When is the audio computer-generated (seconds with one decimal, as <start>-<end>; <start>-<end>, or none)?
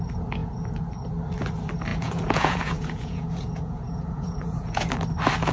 0.4-0.9; 1.9-4.9